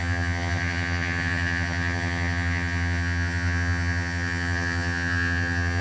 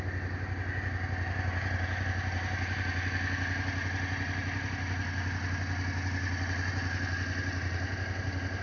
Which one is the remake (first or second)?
first